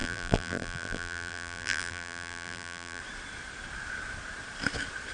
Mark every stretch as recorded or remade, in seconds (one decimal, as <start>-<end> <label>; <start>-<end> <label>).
0.0-3.0 remade; 3.0-5.1 recorded